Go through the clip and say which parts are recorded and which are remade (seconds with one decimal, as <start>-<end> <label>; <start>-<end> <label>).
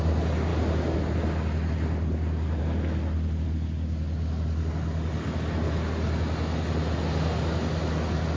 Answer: 0.0-8.4 recorded